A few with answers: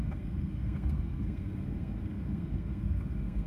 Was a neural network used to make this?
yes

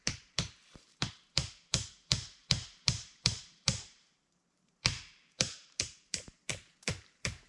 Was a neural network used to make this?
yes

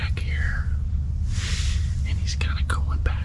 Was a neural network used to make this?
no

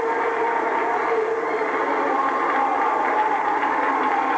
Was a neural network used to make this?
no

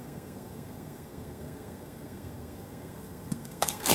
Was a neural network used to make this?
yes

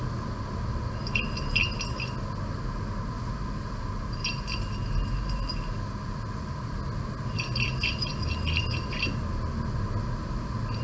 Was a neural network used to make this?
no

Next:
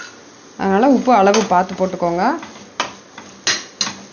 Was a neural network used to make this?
no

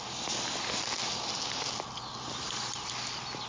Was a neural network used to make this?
no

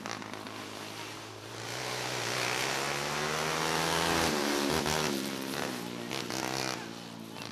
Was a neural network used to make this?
no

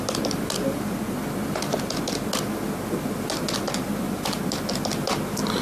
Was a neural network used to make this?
no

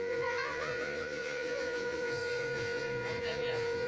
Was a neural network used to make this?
yes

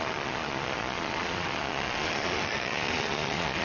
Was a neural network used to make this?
yes